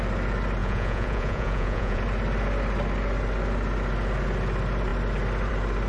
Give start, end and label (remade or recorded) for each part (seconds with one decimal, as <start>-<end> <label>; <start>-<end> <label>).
0.0-0.6 recorded; 0.6-2.0 remade; 2.0-5.9 recorded